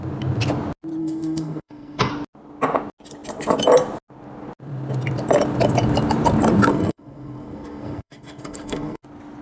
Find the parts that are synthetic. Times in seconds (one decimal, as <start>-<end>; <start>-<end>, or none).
1.0-2.1; 6.7-9.0